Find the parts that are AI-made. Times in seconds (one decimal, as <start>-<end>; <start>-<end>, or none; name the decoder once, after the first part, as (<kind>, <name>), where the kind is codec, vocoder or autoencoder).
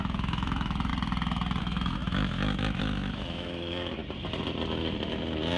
0.0-0.9 (autoencoder, DAC-VAE); 1.6-4.0